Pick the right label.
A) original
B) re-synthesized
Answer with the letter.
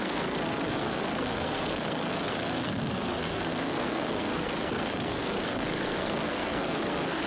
B